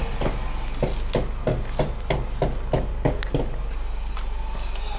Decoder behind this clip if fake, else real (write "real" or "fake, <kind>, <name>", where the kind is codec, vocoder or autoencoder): real